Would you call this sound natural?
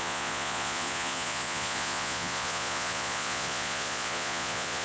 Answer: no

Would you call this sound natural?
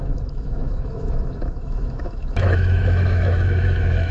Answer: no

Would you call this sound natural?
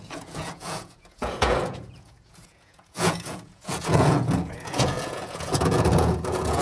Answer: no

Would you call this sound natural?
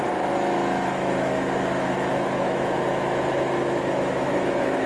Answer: no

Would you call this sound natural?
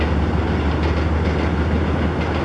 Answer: yes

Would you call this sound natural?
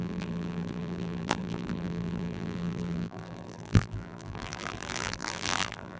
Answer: no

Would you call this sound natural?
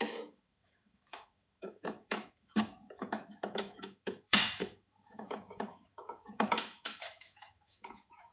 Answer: no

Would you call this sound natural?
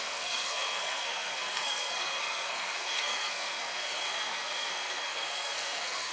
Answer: no